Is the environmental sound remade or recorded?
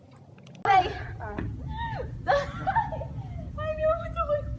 recorded